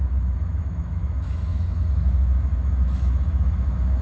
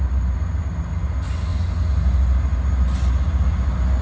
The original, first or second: second